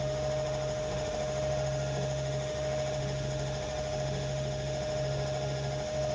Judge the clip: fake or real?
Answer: fake